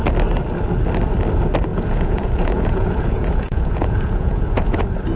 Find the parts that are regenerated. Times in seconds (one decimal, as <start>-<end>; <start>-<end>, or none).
1.7-4.8